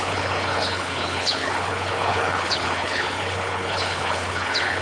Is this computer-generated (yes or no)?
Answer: yes